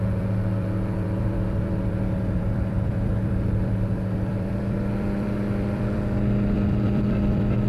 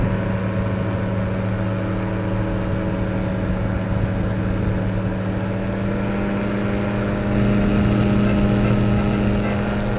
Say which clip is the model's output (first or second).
first